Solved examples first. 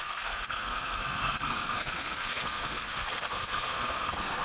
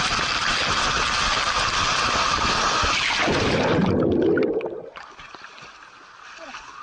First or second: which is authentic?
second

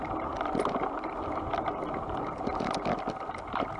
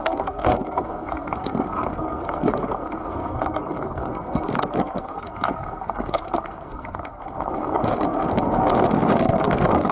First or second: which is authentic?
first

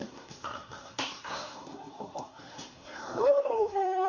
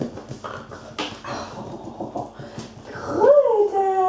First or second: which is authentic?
second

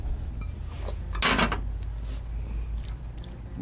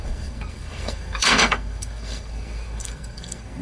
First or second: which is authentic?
first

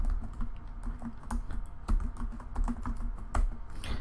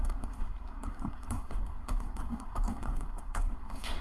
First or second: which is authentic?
first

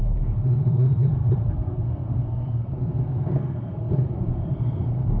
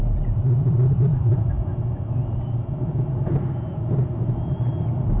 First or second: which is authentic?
second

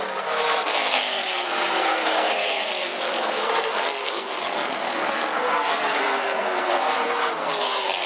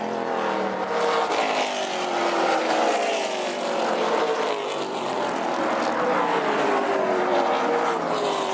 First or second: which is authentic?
second